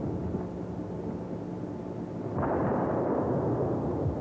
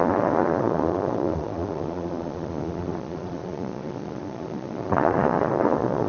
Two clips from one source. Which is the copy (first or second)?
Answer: second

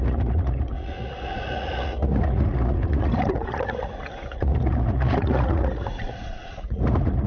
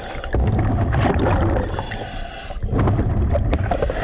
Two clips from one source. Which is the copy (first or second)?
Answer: first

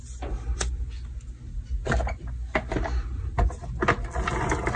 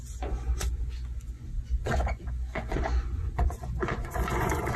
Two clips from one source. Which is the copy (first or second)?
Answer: second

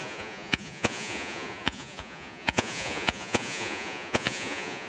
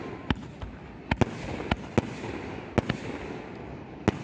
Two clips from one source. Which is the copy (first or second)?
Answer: first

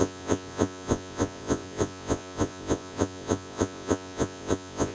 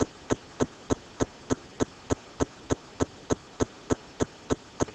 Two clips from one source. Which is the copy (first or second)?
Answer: first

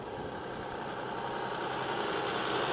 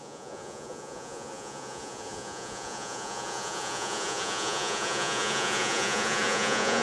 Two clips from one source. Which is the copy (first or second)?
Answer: second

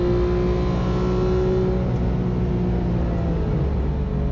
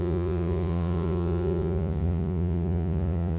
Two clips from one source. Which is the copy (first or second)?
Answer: second